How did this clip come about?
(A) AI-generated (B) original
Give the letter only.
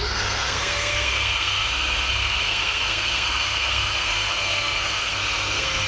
A